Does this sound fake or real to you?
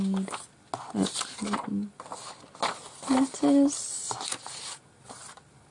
real